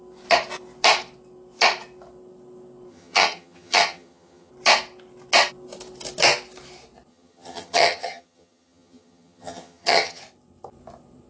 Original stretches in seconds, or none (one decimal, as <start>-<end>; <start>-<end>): 0.0-2.9; 4.5-7.1; 10.2-11.3